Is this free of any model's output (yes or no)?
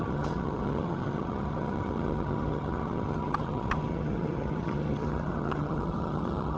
no